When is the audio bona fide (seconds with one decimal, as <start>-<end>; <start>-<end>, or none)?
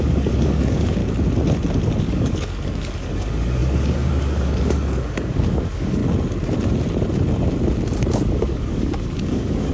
1.0-2.0; 6.0-8.1